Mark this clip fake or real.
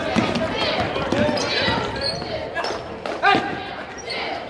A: real